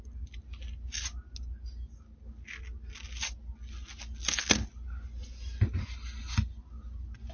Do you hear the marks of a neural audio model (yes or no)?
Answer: no